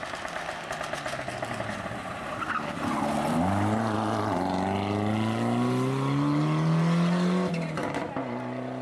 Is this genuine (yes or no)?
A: yes